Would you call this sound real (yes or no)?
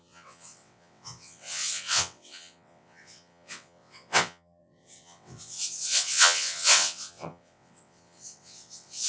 no